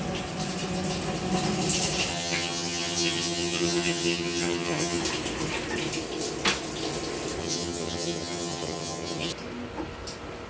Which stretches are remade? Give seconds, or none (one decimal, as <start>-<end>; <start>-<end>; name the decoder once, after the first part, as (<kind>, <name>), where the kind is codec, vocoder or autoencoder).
2.1-5.0 (vocoder, HiFi-GAN); 7.4-9.3